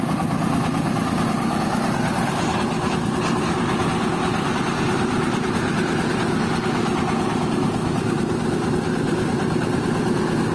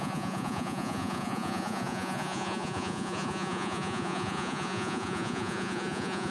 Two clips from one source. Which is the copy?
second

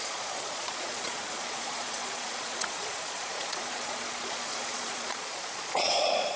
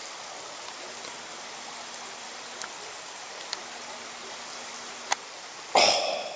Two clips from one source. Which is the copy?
first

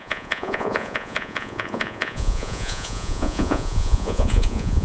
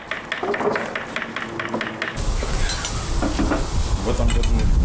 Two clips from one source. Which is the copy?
first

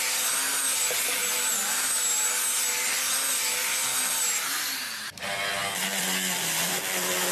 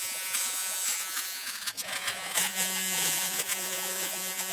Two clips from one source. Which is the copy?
second